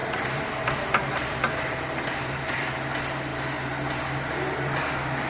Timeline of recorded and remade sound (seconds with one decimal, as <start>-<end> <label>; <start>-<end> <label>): 0.0-2.8 remade; 2.8-5.3 recorded